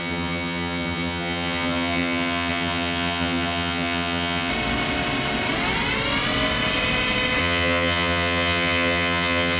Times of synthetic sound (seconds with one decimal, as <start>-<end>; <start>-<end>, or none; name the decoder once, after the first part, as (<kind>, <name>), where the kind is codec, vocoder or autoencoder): 0.0-4.5 (vocoder, HiFi-GAN); 7.4-9.6